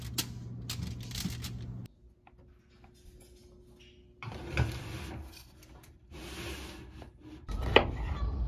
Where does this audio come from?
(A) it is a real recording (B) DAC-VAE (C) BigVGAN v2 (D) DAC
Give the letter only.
A